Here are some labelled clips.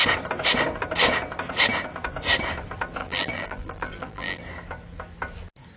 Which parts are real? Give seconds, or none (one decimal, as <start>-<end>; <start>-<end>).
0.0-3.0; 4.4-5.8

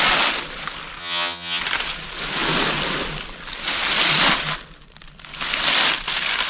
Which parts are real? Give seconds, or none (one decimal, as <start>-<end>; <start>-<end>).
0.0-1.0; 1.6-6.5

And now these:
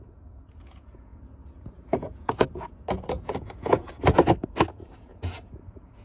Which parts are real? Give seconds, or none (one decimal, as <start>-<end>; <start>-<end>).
none

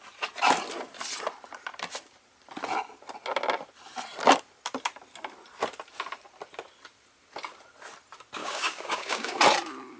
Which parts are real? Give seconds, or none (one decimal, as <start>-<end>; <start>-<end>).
0.0-8.4; 9.4-10.0

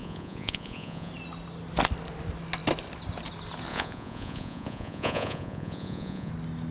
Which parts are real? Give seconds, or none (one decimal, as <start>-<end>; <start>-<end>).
1.1-3.7; 6.3-6.7

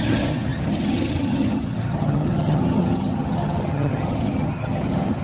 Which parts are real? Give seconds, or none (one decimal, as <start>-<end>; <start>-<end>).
none

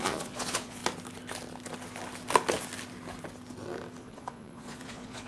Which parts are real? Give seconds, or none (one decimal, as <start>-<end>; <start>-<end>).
0.8-4.0